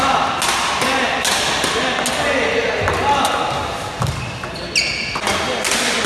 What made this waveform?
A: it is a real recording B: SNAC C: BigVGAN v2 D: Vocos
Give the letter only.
A